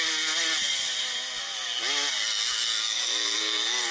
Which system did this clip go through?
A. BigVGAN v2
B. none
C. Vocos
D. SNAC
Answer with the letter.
B